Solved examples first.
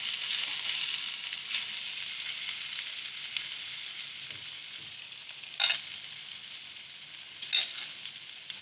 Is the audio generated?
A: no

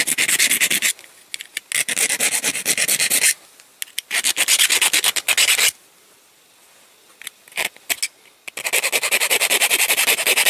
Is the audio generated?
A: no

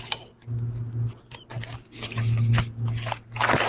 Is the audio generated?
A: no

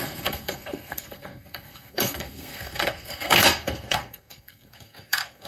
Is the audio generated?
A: yes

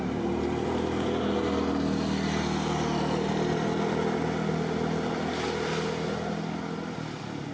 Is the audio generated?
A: no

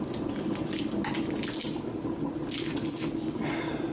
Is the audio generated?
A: no